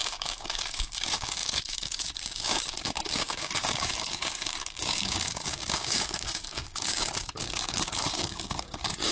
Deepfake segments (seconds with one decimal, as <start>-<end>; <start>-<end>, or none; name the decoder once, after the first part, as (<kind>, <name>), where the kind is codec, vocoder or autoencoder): 0.0-9.1 (codec, DAC)